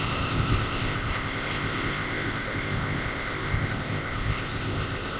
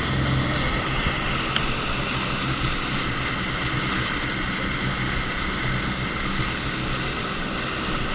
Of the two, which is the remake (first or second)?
first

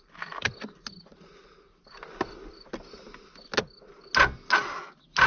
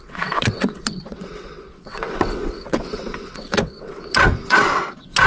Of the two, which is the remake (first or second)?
second